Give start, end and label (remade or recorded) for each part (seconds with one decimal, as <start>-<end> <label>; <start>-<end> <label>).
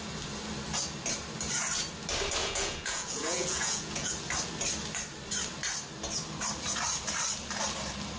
0.0-2.4 recorded; 2.4-4.1 remade; 4.1-8.2 recorded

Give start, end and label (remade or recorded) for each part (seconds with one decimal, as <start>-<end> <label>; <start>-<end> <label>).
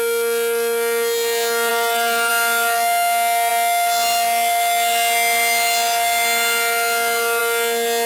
0.0-1.7 recorded; 1.7-2.3 remade; 2.3-8.1 recorded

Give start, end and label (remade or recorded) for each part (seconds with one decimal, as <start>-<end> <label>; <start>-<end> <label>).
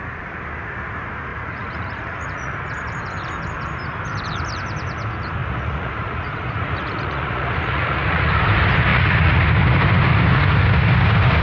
0.0-1.3 recorded; 1.3-2.7 remade; 2.7-5.4 recorded; 5.4-8.4 remade; 8.4-8.9 recorded; 8.9-9.4 remade; 9.4-11.4 recorded